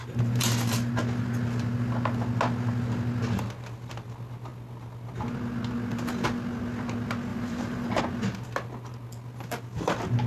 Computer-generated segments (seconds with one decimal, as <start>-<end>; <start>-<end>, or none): 0.0-0.9; 7.3-8.0